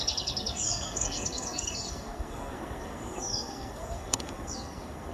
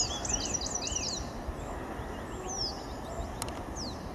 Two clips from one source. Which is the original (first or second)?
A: second